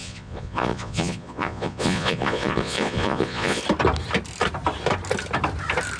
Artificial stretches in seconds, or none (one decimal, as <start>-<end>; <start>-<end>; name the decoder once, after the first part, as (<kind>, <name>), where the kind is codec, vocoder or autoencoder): 0.0-3.6 (vocoder, Vocos)

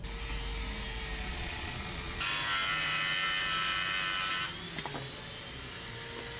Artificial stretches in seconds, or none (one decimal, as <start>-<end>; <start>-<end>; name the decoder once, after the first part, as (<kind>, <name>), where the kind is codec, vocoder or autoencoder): 1.3-2.2 (vocoder, Vocos)